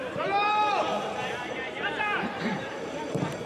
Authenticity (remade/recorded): remade